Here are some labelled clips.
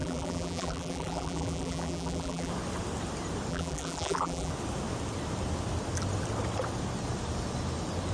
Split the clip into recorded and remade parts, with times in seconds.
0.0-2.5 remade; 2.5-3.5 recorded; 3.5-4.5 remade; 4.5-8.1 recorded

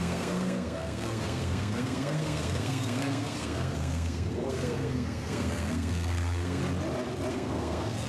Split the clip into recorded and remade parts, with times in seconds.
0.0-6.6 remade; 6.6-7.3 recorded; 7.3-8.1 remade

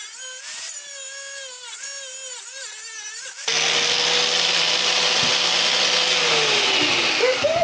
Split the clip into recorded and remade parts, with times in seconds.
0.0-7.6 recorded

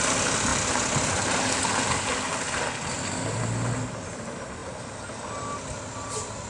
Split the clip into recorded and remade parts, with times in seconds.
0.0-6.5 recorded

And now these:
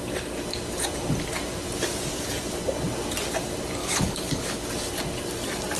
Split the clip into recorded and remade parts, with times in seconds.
0.0-3.8 recorded; 3.8-4.6 remade; 4.6-5.8 recorded

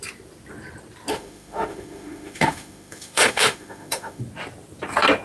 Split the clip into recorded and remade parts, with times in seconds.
0.0-1.1 recorded; 1.1-4.2 remade; 4.2-5.2 recorded

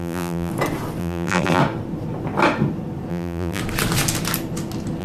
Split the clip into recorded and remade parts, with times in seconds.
0.0-0.5 remade; 0.5-1.0 recorded; 1.0-1.6 remade; 1.6-3.1 recorded; 3.1-3.6 remade; 3.6-5.0 recorded

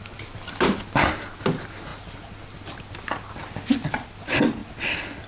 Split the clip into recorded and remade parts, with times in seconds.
0.0-5.3 recorded